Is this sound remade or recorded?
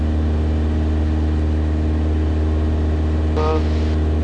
recorded